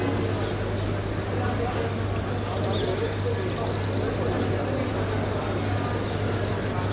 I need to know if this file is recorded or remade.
recorded